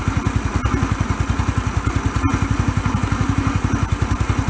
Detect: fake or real real